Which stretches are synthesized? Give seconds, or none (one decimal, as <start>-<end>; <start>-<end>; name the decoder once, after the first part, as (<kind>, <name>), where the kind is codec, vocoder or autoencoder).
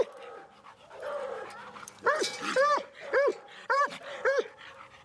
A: 1.6-2.2 (vocoder, BigVGAN v2)